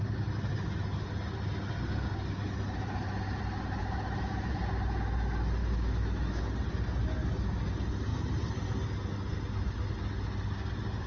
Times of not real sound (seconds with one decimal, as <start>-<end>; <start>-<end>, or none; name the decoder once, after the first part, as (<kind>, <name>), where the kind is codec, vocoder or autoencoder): 3.8-4.5 (autoencoder, DAC-VAE); 5.6-6.4

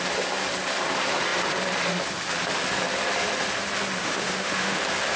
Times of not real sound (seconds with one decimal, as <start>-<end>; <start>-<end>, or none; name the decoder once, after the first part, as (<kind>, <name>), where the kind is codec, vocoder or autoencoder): 4.0-4.8 (autoencoder, DAC-VAE)

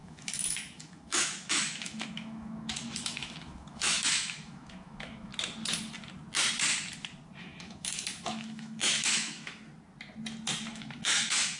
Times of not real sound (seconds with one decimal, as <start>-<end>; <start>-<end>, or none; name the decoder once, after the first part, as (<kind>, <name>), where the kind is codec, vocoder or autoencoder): 0.0-5.3 (autoencoder, DAC-VAE); 7.4-9.6; 10.7-11.6

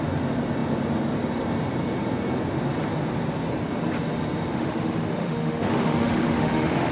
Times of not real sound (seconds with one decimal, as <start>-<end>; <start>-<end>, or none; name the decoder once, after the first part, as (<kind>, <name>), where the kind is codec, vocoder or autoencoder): 4.5-6.9 (autoencoder, DAC-VAE)

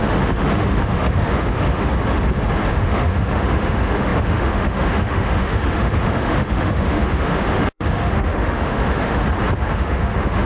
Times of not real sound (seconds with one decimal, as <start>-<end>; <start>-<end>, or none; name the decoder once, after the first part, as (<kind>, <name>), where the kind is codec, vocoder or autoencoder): 0.0-1.9 (autoencoder, DAC-VAE); 2.7-9.2; 9.7-10.5

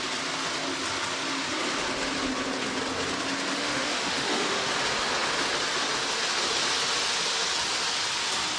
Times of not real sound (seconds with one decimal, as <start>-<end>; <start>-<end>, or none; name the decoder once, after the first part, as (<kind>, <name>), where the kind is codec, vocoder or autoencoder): 3.5-4.7 (autoencoder, DAC-VAE)